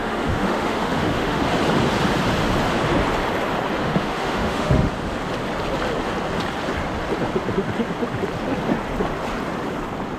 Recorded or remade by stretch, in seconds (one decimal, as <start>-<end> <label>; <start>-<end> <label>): 0.0-1.4 remade; 1.4-3.8 recorded; 3.8-4.9 remade; 4.9-10.2 recorded